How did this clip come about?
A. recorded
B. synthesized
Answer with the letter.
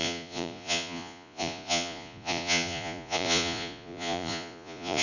B